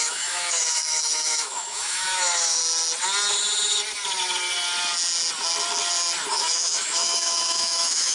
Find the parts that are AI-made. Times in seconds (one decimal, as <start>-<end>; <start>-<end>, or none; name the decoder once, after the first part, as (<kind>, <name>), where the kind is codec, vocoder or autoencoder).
0.0-2.6 (autoencoder, DAC-VAE); 6.3-8.1